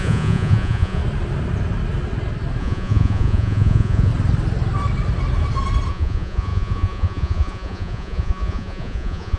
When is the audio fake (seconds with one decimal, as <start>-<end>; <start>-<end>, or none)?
0.0-1.0; 2.6-4.1; 5.9-9.4